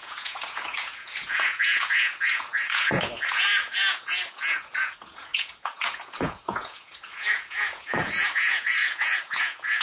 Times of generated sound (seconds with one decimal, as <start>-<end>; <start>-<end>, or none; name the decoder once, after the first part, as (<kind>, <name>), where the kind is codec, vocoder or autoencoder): 0.0-9.8 (vocoder, Vocos)